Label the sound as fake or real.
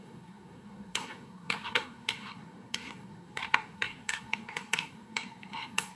fake